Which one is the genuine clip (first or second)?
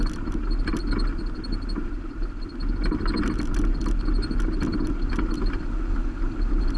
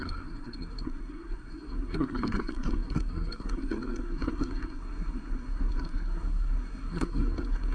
first